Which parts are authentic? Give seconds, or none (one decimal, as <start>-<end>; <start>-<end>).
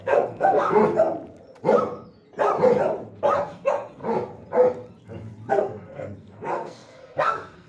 0.8-3.4; 4.0-5.5